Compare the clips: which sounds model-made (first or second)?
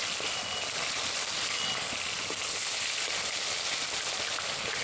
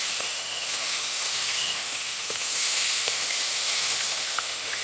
second